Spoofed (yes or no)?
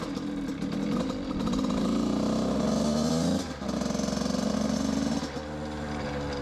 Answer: no